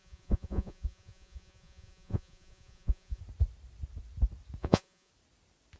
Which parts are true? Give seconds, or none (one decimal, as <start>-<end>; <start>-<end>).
3.2-4.6; 5.1-5.8